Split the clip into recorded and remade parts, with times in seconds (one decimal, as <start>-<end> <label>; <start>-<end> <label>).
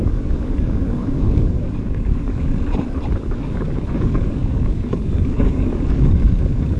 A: 0.0-2.5 remade; 2.5-3.2 recorded; 3.2-6.8 remade